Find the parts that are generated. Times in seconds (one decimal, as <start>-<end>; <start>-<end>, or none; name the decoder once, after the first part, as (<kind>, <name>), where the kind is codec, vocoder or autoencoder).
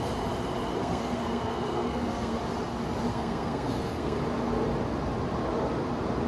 0.8-2.4 (codec, SNAC); 3.1-4.2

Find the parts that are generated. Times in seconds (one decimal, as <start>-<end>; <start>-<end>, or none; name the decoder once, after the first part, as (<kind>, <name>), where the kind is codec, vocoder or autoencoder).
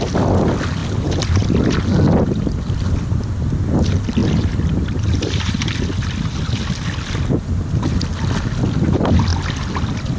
4.2-5.7 (vocoder, BigVGAN v2)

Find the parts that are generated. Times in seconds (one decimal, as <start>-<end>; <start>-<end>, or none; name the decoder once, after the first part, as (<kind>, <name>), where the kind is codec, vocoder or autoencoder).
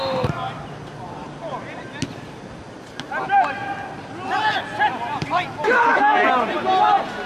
none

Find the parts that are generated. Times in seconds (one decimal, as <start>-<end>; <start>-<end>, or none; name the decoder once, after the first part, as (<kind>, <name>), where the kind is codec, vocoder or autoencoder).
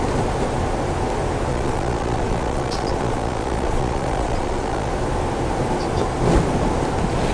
1.5-4.9 (vocoder, Vocos)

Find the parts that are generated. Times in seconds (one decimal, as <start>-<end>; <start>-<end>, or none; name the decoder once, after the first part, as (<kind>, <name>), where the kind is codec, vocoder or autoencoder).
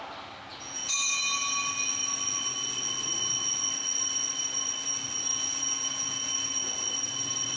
0.5-1.2 (vocoder, Vocos); 5.3-6.7